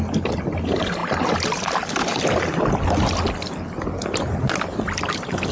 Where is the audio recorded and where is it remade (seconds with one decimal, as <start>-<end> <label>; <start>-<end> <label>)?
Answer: 0.0-5.5 recorded